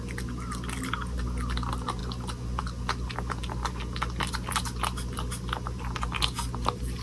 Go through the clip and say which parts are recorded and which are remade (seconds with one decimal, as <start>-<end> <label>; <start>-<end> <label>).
0.0-7.0 recorded